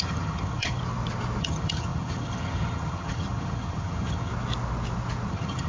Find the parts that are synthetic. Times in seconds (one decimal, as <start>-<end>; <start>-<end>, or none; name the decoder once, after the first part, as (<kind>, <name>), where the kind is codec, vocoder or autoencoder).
0.0-0.8 (vocoder, HiFi-GAN); 1.4-4.3; 5.3-5.7